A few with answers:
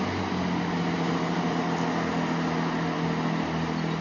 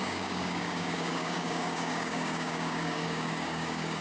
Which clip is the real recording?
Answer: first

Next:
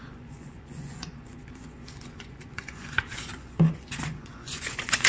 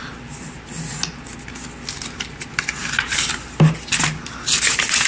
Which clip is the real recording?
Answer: second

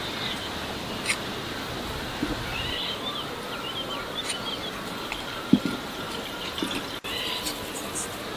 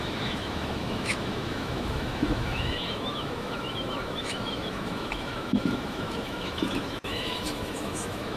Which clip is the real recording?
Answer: first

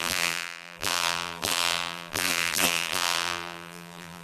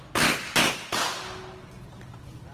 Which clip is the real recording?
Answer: second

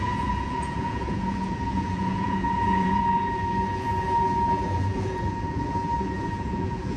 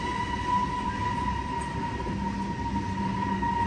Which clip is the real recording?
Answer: second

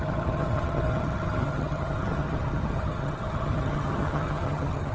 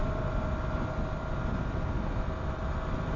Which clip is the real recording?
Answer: second